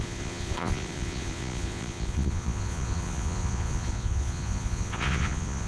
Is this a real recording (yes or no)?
no